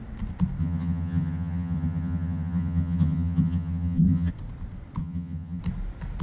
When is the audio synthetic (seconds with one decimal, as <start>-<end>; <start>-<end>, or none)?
0.6-4.3; 5.0-5.6